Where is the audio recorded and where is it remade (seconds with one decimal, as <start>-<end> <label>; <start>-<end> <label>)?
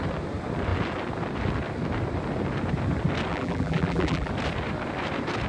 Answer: 0.0-3.3 recorded; 3.3-4.3 remade; 4.3-5.5 recorded